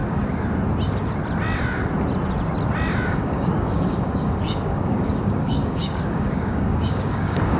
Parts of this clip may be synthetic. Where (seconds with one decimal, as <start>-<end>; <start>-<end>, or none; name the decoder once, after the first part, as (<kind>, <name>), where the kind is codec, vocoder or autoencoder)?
3.1-7.6 (codec, DAC)